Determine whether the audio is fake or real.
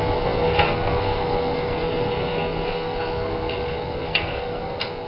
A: fake